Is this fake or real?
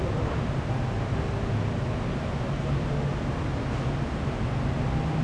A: real